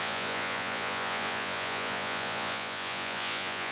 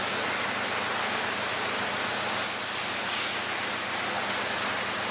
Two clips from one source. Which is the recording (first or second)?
second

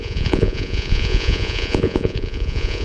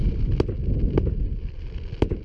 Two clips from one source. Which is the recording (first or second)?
second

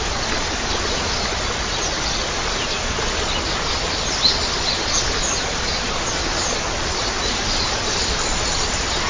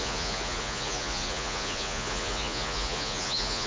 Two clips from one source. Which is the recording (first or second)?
first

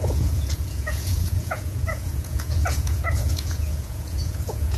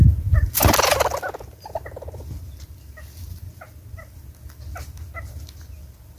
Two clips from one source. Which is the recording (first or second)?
second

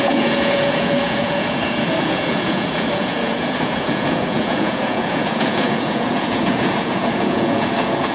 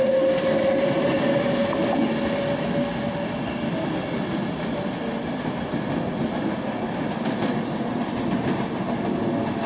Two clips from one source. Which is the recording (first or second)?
second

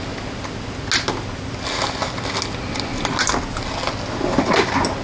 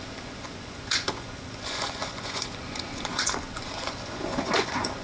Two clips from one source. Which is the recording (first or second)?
first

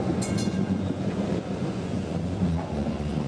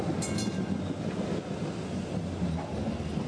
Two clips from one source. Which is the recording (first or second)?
second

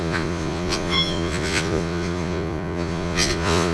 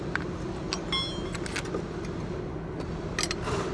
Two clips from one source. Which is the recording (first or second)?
second